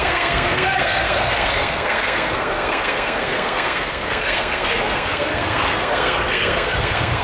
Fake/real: fake